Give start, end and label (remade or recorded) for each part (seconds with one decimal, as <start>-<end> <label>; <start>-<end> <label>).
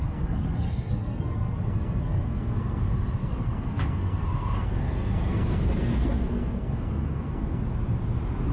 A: 0.0-2.8 remade; 2.8-3.2 recorded; 3.2-7.6 remade; 7.6-8.5 recorded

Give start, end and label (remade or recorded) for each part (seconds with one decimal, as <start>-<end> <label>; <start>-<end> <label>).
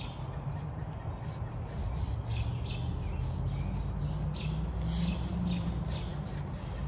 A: 0.0-6.9 recorded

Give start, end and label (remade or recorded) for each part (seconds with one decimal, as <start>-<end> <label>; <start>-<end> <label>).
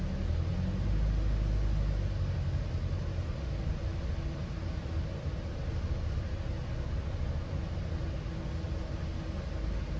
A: 0.0-10.0 recorded